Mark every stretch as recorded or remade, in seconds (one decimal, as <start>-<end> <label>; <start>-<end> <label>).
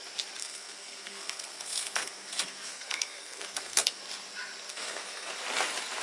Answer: 0.0-0.4 recorded; 0.4-4.0 remade; 4.0-4.7 recorded; 4.7-5.3 remade; 5.3-6.0 recorded